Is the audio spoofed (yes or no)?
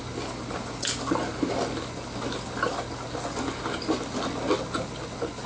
no